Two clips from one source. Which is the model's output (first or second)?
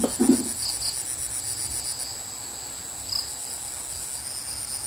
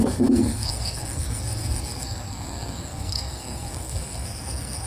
second